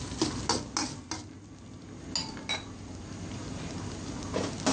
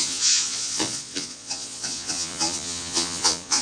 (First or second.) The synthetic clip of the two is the second